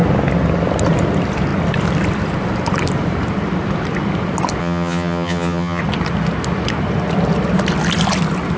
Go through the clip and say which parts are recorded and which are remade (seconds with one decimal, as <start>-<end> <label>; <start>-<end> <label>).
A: 0.0-4.6 recorded; 4.6-5.8 remade; 5.8-8.6 recorded